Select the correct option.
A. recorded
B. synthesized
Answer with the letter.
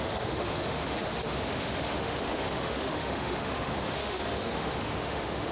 B